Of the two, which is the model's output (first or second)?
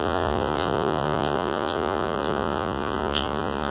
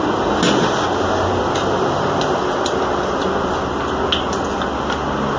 first